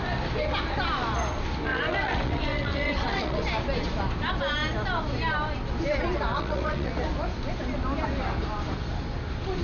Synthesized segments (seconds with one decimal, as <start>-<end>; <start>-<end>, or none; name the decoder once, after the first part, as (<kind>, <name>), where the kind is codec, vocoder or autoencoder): 1.7-3.4 (vocoder, WaveNeXt); 6.3-6.9